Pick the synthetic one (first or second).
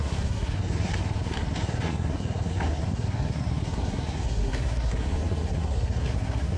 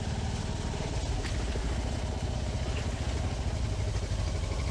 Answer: first